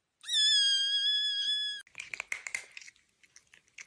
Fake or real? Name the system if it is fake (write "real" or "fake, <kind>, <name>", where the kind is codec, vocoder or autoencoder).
real